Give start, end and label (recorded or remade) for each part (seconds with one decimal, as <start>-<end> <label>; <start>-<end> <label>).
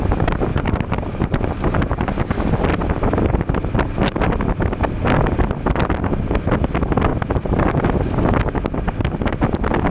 0.0-0.5 recorded; 0.5-1.4 remade; 1.4-7.1 recorded; 7.1-8.2 remade; 8.2-9.9 recorded